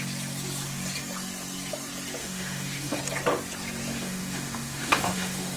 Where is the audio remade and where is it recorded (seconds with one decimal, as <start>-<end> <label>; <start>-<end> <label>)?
0.0-2.2 recorded; 2.2-3.0 remade; 3.0-3.9 recorded; 3.9-5.6 remade

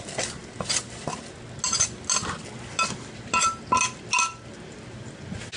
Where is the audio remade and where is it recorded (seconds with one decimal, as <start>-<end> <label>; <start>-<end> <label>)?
0.0-5.6 recorded

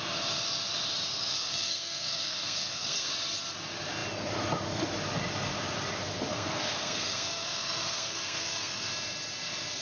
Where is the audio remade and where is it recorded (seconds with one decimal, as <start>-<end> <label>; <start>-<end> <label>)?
0.0-1.3 recorded; 1.3-3.1 remade; 3.1-6.3 recorded; 6.3-8.9 remade; 8.9-9.8 recorded

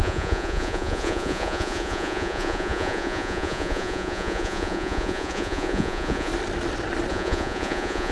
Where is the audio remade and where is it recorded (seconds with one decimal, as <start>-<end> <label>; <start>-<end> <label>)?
0.0-6.3 remade; 6.3-7.1 recorded; 7.1-8.1 remade

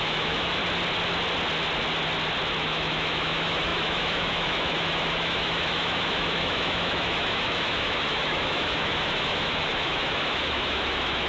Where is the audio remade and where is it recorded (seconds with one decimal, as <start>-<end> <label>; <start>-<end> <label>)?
0.0-0.6 remade; 0.6-2.6 recorded; 2.6-11.3 remade